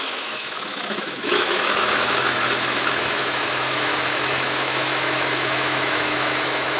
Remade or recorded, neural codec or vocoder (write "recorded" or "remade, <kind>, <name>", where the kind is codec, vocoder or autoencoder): remade, autoencoder, DAC-VAE